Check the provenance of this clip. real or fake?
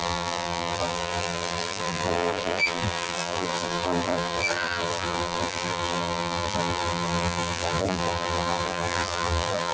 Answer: fake